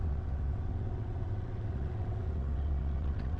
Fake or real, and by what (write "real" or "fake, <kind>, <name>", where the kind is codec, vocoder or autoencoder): fake, vocoder, WaveNeXt